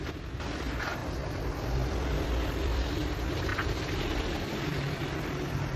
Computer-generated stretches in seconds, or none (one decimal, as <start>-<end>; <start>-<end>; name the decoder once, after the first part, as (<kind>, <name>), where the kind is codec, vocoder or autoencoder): 0.0-1.0 (vocoder, BigVGAN v2); 1.5-5.8